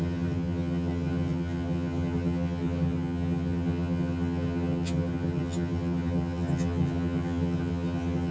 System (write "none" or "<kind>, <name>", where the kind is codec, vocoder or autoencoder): vocoder, HiFi-GAN